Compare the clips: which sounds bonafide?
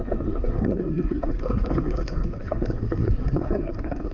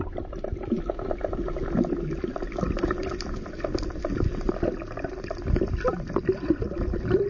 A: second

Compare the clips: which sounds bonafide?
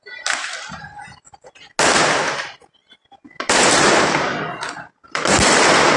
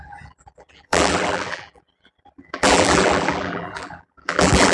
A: first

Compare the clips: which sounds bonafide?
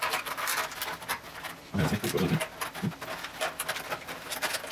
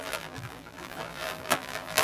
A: first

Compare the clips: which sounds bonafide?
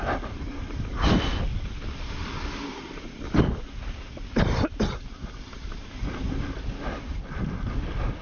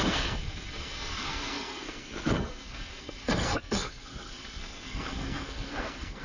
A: first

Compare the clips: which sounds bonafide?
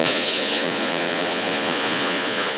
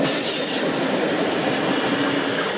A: second